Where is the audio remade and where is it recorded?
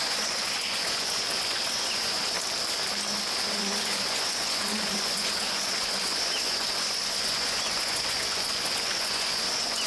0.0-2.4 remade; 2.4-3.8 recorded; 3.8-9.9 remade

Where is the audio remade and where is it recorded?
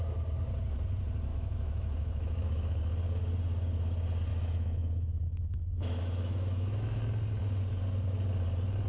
0.0-1.3 recorded; 1.3-2.8 remade; 2.8-4.3 recorded; 4.3-7.0 remade; 7.0-8.9 recorded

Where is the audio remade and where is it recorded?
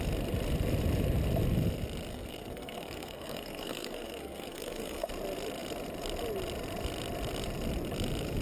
0.0-2.1 recorded; 2.1-5.1 remade; 5.1-8.4 recorded